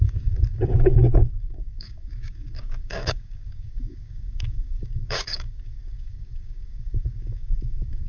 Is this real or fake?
fake